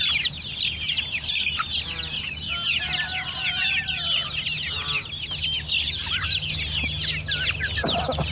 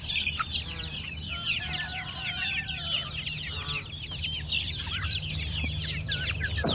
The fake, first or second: second